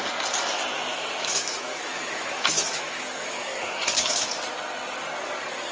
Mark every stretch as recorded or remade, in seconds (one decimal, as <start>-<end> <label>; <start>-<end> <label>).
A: 0.0-0.9 recorded; 0.9-4.3 remade; 4.3-5.7 recorded